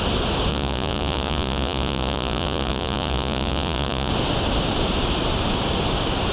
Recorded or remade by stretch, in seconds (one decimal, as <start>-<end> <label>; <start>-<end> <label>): 0.0-0.5 recorded; 0.5-4.1 remade; 4.1-6.3 recorded